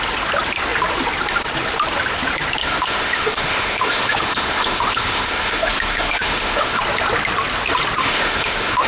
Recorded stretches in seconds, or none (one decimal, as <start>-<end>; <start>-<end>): 0.0-2.6; 6.8-8.0